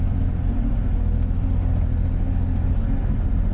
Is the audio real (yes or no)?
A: yes